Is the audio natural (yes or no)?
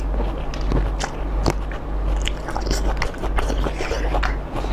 yes